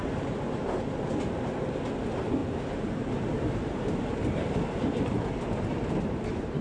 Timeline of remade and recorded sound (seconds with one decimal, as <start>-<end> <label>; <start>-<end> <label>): 0.0-2.4 recorded; 2.4-6.6 remade